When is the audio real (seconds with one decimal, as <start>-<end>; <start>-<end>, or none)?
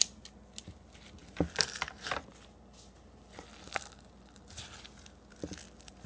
0.0-6.1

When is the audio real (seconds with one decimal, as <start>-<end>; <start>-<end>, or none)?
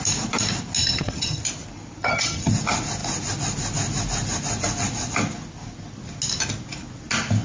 0.0-0.8; 1.4-2.0; 2.5-7.4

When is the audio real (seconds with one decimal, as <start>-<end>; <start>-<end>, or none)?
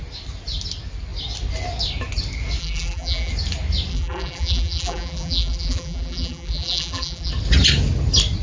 0.0-2.6; 3.3-3.9; 7.3-8.4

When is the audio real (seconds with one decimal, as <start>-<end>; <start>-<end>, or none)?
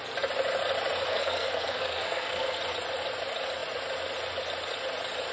0.0-1.1; 2.6-5.3